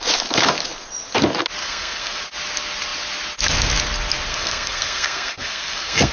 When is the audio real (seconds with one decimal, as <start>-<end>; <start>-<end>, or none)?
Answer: 0.0-1.6; 2.2-4.3